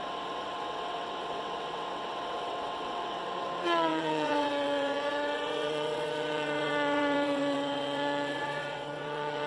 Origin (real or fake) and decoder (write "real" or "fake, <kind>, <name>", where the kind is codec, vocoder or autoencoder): fake, vocoder, WaveNeXt